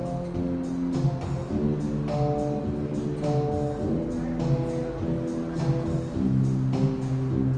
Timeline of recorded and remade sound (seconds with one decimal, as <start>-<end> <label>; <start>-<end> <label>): 0.0-7.6 recorded